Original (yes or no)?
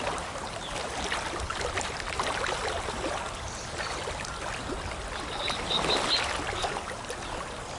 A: yes